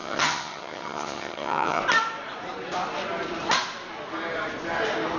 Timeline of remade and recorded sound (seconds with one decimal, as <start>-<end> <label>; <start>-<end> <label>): 0.0-1.8 remade; 1.8-5.2 recorded